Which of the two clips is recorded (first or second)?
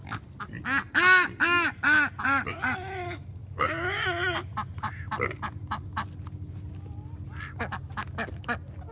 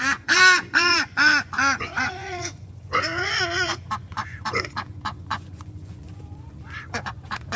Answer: first